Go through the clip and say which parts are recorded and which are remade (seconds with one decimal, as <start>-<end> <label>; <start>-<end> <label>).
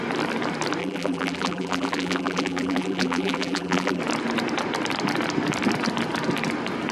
0.0-0.8 recorded; 0.8-4.0 remade; 4.0-6.9 recorded